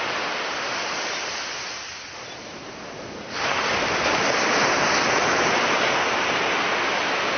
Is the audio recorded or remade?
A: recorded